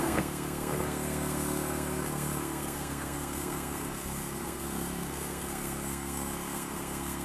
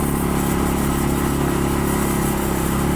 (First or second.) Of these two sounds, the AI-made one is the first